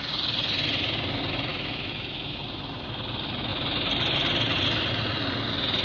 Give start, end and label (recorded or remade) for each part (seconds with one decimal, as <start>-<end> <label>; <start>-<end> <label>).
0.0-1.5 recorded; 1.5-2.4 remade; 2.4-5.8 recorded